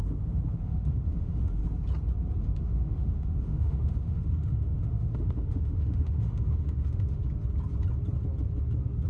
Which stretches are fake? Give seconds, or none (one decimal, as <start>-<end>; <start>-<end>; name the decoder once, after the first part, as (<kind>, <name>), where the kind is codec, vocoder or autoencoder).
0.0-1.6 (autoencoder, DAC-VAE); 2.4-7.2